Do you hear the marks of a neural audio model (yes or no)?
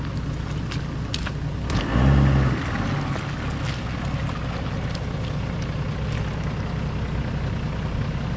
no